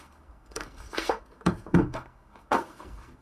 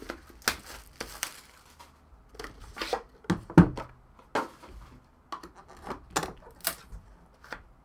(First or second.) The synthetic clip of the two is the first